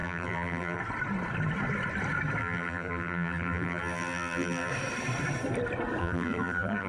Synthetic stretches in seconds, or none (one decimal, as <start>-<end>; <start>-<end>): 0.0-0.8; 2.4-4.7; 6.0-6.9